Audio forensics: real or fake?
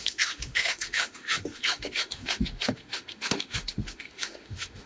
fake